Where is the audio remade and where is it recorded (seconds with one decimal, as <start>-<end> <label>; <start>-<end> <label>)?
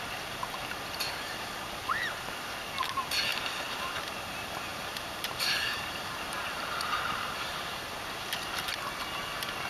0.0-4.7 recorded; 4.7-7.9 remade; 7.9-9.7 recorded